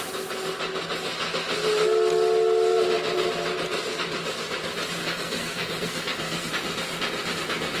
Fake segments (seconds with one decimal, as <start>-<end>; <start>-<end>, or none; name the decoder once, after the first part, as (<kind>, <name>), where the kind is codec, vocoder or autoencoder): 5.0-6.5 (codec, SNAC)